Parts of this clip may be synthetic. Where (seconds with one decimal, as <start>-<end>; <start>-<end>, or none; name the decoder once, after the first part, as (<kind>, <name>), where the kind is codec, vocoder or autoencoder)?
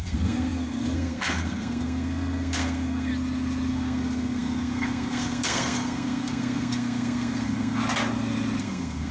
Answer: 0.0-3.1 (codec, SNAC); 3.7-7.8; 8.6-9.1